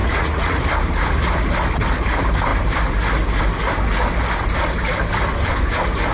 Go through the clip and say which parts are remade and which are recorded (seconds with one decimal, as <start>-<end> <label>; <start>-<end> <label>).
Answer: 0.0-0.6 remade; 0.6-6.1 recorded